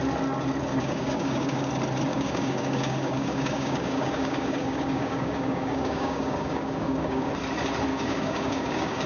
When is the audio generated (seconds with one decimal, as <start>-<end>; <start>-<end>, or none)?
0.7-1.7; 2.1-7.3; 7.9-9.1

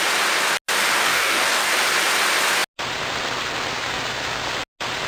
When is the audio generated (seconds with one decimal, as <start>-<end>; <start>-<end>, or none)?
1.0-1.7

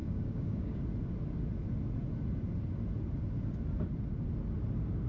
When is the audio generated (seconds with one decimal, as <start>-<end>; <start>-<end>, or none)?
0.0-0.8

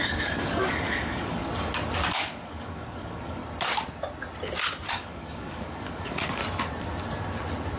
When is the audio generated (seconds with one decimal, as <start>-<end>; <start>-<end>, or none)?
0.0-1.5; 2.1-3.4; 4.9-6.4

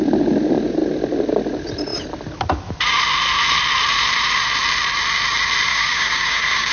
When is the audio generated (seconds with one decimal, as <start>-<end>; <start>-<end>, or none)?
5.7-6.7